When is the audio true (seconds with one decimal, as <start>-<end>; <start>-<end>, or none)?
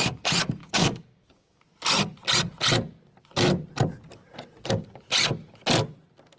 0.0-0.6; 1.6-6.4